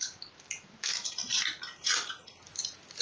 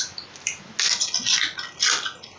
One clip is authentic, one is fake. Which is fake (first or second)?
first